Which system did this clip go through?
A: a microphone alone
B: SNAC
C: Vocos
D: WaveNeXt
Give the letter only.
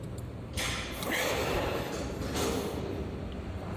A